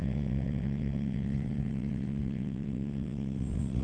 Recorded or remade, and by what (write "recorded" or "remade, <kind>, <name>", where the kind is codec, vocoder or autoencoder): remade, vocoder, WaveNeXt